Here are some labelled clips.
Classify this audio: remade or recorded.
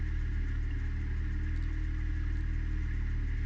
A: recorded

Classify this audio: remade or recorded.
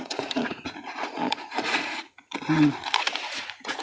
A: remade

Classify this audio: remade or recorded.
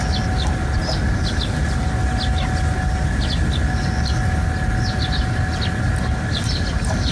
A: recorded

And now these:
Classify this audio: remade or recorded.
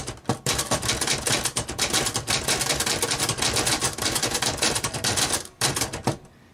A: remade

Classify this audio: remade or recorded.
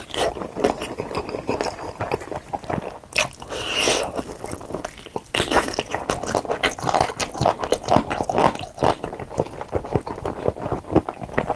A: recorded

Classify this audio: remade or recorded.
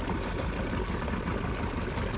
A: recorded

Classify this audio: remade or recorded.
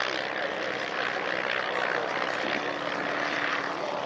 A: recorded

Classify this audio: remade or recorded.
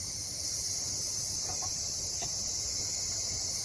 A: recorded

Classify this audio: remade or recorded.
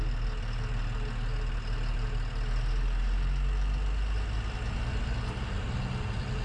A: recorded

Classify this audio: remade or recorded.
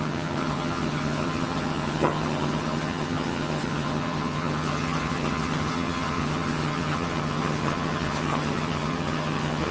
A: remade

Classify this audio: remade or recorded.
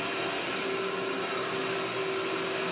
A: recorded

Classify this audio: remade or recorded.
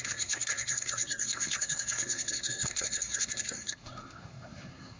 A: remade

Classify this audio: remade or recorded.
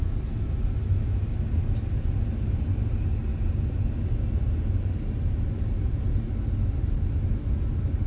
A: recorded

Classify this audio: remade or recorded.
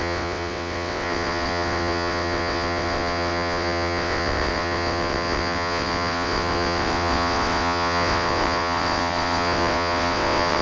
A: remade